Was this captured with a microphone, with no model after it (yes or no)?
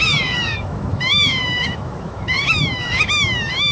no